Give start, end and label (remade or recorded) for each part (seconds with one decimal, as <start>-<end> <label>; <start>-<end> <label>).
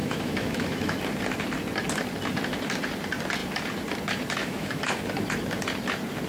0.0-1.0 remade; 1.0-4.4 recorded; 4.4-5.0 remade; 5.0-6.3 recorded